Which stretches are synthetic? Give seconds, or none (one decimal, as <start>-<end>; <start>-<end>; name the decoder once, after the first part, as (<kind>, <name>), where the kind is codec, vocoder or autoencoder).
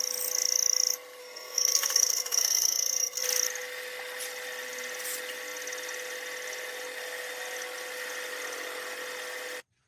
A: 1.2-3.2 (codec, SNAC)